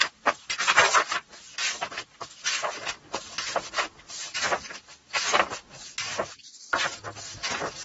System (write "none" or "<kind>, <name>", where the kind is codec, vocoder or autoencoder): none